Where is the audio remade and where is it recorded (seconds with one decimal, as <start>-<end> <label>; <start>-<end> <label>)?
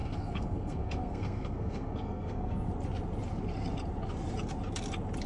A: 0.0-2.7 remade; 2.7-5.3 recorded